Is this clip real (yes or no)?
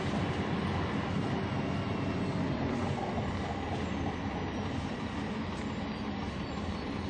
yes